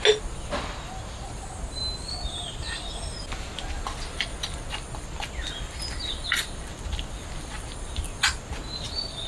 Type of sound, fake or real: real